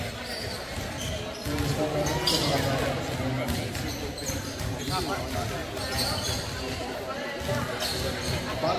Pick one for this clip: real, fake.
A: real